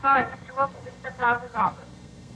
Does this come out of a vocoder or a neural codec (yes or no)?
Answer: yes